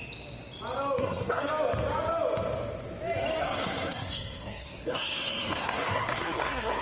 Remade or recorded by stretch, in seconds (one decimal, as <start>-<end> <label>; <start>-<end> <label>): 0.0-1.0 recorded; 1.0-1.5 remade; 1.5-3.4 recorded; 3.4-6.8 remade

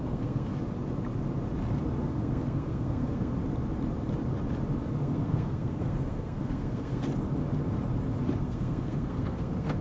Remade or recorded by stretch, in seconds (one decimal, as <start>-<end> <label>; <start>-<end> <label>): 0.0-0.5 remade; 0.5-2.0 recorded; 2.0-3.3 remade; 3.3-5.0 recorded; 5.0-7.1 remade; 7.1-8.4 recorded; 8.4-9.8 remade